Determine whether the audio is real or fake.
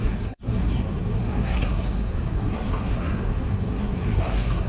fake